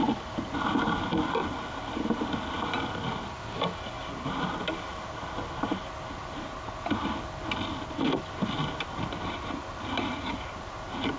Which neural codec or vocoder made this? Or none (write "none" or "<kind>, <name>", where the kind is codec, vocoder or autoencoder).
none